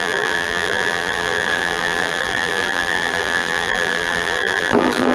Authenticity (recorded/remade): remade